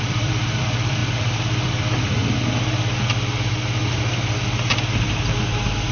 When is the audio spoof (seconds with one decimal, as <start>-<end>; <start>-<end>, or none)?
0.0-2.2